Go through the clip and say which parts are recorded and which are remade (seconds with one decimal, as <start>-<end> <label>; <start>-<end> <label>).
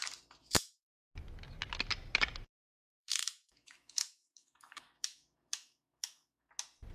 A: 0.0-0.4 recorded; 0.4-1.0 remade; 1.0-2.7 recorded; 2.7-6.5 remade; 6.5-6.9 recorded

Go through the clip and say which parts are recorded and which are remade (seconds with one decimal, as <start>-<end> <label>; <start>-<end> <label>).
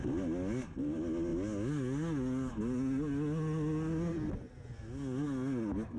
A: 0.0-6.0 recorded